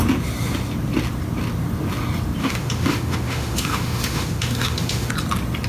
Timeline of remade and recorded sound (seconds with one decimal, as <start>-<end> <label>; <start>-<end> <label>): 0.0-2.4 recorded; 2.4-5.1 remade; 5.1-5.7 recorded